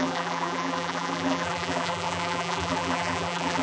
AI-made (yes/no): yes